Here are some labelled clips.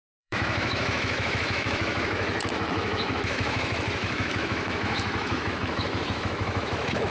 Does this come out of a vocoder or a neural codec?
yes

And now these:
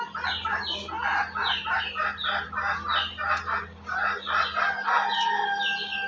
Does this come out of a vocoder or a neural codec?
no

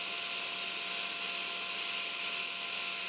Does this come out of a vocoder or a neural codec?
no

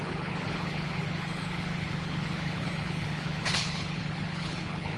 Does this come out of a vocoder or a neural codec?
yes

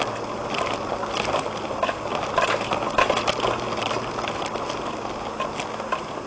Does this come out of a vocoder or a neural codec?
no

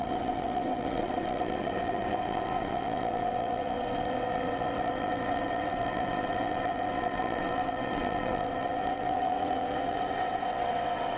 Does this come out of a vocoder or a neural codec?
yes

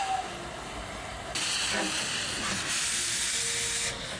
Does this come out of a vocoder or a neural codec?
no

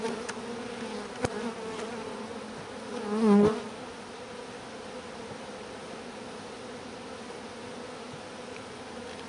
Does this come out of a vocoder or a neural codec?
no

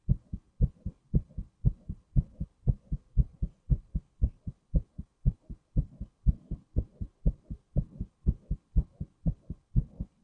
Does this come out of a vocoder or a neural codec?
no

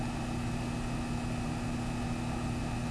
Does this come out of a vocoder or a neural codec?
no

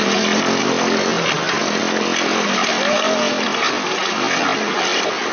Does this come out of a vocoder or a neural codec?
no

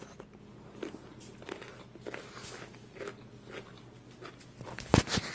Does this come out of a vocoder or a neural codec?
no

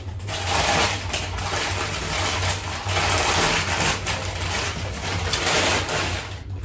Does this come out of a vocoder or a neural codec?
no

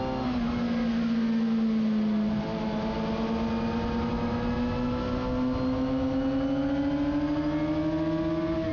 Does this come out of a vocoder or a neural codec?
no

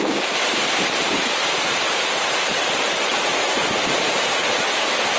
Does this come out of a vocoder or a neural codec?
yes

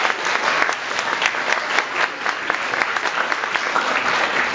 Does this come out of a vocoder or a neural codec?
no